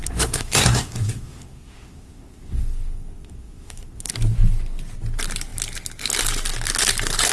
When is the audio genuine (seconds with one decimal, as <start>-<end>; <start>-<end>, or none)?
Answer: 4.1-7.3